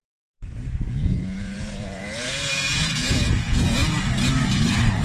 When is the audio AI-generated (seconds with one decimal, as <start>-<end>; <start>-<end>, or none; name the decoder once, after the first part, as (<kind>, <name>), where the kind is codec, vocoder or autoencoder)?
0.9-3.8 (vocoder, Vocos)